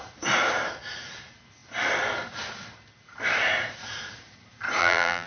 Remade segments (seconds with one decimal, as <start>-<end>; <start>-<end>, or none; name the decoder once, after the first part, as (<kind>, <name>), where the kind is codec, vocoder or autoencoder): 4.8-5.3 (vocoder, BigVGAN v2)